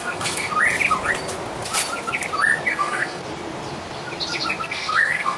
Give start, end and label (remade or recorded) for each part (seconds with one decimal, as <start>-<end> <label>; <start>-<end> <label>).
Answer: 0.0-0.5 remade; 0.5-2.7 recorded; 2.7-3.2 remade; 3.2-4.6 recorded; 4.6-5.4 remade